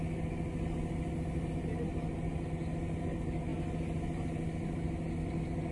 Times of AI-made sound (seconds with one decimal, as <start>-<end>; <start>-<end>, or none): none